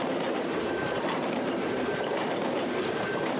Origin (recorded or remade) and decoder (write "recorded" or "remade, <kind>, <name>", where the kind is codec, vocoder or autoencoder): remade, vocoder, BigVGAN v2